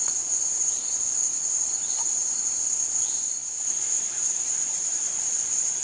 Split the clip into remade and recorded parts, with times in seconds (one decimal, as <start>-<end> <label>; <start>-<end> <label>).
0.0-5.8 remade